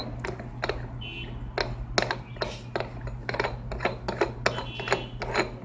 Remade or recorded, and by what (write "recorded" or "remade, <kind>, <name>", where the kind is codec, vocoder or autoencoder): recorded